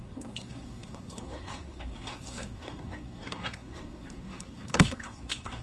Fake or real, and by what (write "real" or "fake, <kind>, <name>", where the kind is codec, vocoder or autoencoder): fake, codec, SNAC